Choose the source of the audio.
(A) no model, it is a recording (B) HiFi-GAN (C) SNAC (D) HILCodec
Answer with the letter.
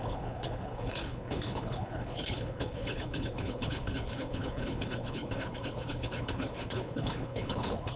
D